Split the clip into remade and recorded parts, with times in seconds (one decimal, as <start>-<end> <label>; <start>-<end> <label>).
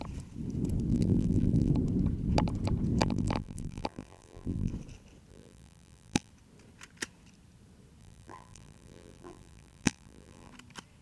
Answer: 0.0-0.9 recorded; 0.9-1.7 remade; 1.7-3.0 recorded; 3.0-4.7 remade; 4.7-5.3 recorded; 5.3-6.3 remade; 6.3-8.0 recorded; 8.0-10.5 remade; 10.5-11.0 recorded